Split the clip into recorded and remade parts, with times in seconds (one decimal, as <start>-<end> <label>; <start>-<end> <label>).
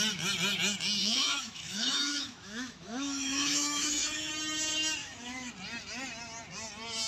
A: 0.0-1.0 recorded; 1.0-4.3 remade; 4.3-5.0 recorded; 5.0-5.5 remade; 5.5-7.1 recorded